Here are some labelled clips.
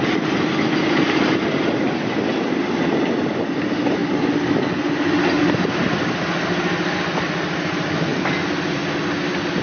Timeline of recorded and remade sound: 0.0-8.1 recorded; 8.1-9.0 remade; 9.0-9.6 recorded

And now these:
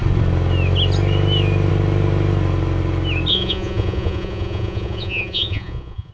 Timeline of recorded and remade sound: 0.0-3.3 recorded; 3.3-6.1 remade

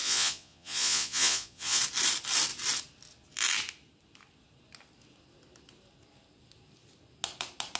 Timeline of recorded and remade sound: 0.0-1.8 remade; 1.8-7.8 recorded

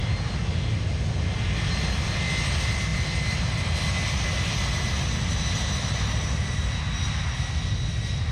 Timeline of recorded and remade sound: 0.0-8.3 recorded

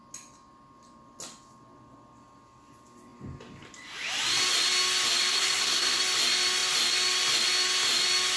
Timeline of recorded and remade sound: 0.0-5.3 recorded; 5.3-6.0 remade; 6.0-8.4 recorded

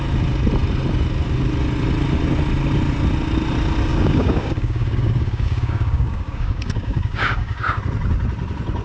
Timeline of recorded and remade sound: 0.0-3.9 recorded; 3.9-7.8 remade; 7.8-8.8 recorded

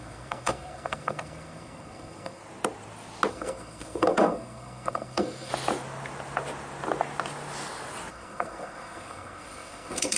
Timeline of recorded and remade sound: 0.0-2.4 remade; 2.4-3.3 recorded; 3.3-5.5 remade; 5.5-8.1 recorded; 8.1-10.2 remade